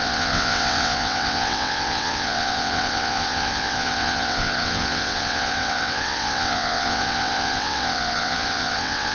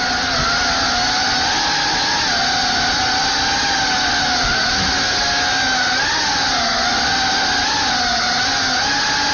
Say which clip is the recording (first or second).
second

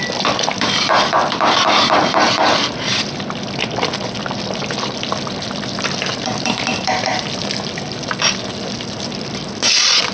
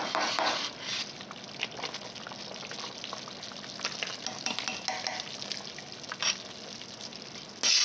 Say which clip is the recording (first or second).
second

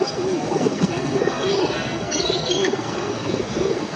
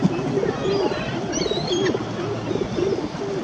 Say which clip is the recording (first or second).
second